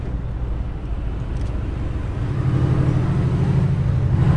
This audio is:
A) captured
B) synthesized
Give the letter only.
A